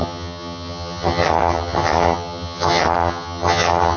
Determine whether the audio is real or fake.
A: fake